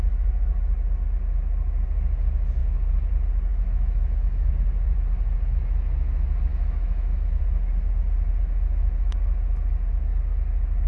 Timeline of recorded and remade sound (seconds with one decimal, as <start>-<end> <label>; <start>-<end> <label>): 0.0-3.5 recorded; 3.5-4.5 remade; 4.5-6.5 recorded; 6.5-7.4 remade; 7.4-10.9 recorded